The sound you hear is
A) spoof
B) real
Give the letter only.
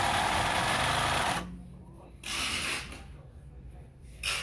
B